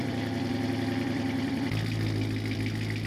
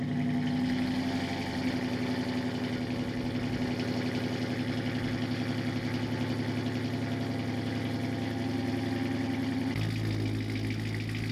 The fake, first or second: first